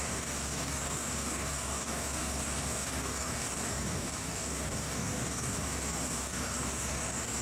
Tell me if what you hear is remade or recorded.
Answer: remade